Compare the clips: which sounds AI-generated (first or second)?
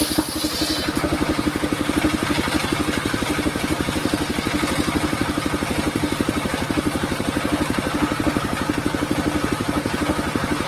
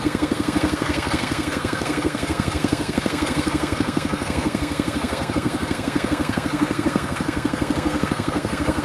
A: second